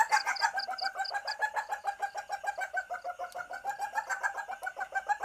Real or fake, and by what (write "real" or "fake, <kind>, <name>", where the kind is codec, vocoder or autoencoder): real